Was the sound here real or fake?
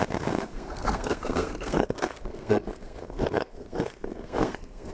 fake